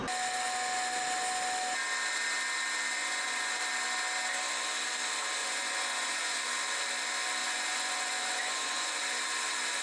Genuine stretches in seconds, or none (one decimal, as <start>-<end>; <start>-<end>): 0.0-3.0; 3.6-5.4; 6.4-7.4; 9.0-9.8